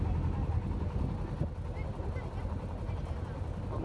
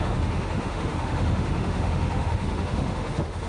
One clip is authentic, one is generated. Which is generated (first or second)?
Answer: second